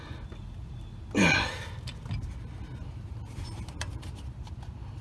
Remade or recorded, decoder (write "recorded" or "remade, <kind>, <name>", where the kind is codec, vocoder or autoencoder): recorded